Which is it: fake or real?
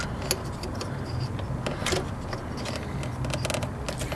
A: real